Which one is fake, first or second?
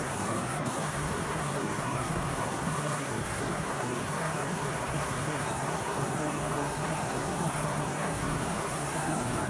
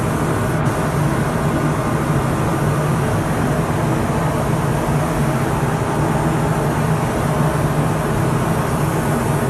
first